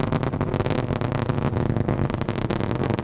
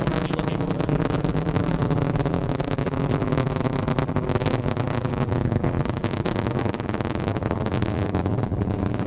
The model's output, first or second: second